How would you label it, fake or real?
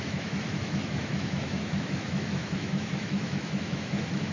fake